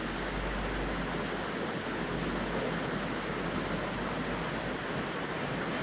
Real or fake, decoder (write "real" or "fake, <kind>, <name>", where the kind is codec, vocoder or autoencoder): real